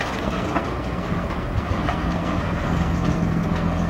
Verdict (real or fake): fake